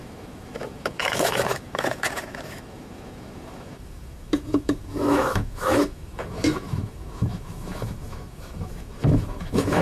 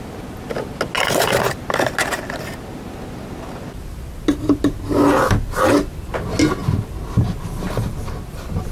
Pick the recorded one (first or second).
second